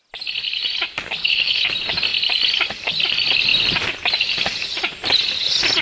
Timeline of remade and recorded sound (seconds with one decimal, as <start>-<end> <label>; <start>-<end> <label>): 0.0-1.2 recorded; 1.2-1.7 remade; 1.7-5.8 recorded